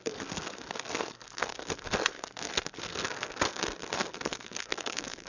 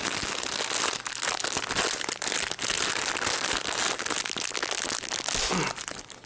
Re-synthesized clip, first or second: first